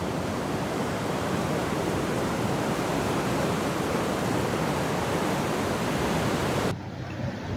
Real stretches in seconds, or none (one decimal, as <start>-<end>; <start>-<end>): 2.3-2.9; 3.7-7.6